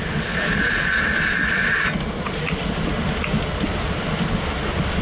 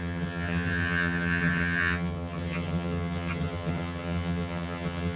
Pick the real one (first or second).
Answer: first